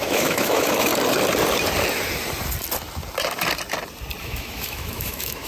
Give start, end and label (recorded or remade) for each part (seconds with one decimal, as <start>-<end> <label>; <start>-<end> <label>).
0.0-0.9 remade; 0.9-4.2 recorded; 4.2-5.5 remade